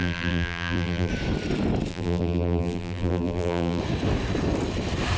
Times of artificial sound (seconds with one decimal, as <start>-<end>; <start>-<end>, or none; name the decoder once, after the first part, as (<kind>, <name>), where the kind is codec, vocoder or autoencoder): 0.0-1.1 (vocoder, BigVGAN v2); 1.9-3.8